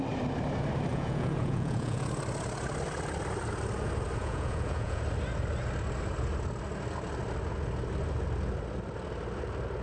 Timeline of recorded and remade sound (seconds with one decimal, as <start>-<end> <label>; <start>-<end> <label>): 0.0-0.9 recorded; 0.9-2.1 remade; 2.1-4.2 recorded; 4.2-5.0 remade; 5.0-9.8 recorded